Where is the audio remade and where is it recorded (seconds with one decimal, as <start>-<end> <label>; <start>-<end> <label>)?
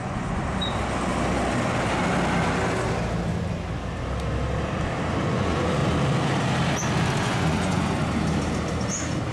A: 0.0-0.4 remade; 0.4-5.2 recorded; 5.2-5.8 remade; 5.8-7.2 recorded; 7.2-8.0 remade; 8.0-9.3 recorded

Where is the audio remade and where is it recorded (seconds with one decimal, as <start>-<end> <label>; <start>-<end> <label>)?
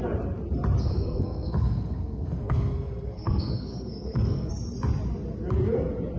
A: 0.0-0.8 recorded; 0.8-4.5 remade; 4.5-6.2 recorded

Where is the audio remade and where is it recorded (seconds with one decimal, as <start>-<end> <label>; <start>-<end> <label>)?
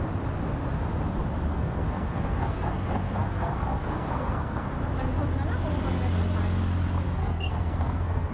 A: 0.0-1.5 recorded; 1.5-4.7 remade; 4.7-7.2 recorded; 7.2-8.3 remade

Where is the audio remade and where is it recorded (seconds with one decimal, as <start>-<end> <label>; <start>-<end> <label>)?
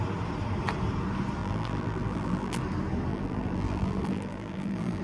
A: 0.0-1.4 recorded; 1.4-2.6 remade; 2.6-3.1 recorded; 3.1-5.0 remade